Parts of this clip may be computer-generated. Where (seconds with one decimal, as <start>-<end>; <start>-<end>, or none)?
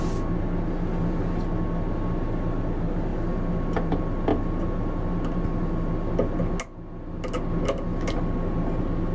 none